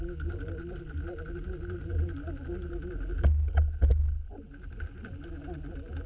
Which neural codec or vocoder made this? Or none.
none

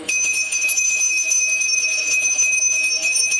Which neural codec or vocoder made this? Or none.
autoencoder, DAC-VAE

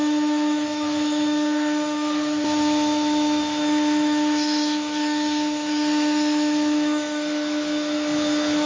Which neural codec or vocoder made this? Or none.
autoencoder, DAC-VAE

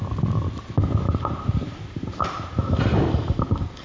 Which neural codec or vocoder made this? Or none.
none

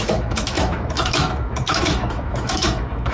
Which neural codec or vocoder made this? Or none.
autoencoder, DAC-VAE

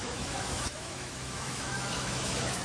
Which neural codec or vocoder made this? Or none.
autoencoder, DAC-VAE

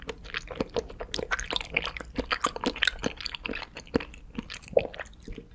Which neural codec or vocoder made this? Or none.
none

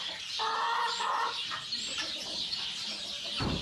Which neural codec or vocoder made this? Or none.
none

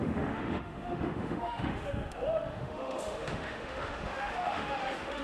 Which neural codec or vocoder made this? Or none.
autoencoder, DAC-VAE